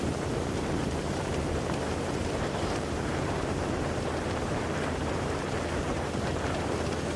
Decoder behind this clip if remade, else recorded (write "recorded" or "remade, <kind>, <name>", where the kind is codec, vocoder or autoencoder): remade, vocoder, BigVGAN v2